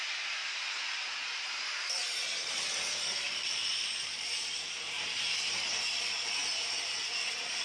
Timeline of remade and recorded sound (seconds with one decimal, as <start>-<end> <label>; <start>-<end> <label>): 0.0-7.6 remade